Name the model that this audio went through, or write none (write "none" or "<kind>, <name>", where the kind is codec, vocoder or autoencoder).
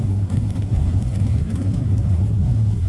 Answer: codec, SNAC